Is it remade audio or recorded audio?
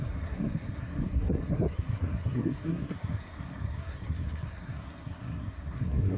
remade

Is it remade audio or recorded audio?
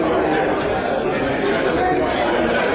recorded